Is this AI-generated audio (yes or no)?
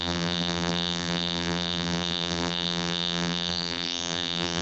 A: yes